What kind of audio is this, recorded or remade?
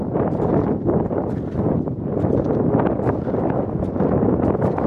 remade